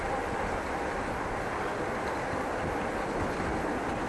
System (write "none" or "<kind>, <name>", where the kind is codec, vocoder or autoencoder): none